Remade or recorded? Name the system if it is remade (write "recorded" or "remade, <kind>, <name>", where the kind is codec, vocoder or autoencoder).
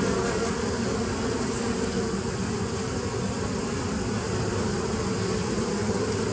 remade, vocoder, BigVGAN v2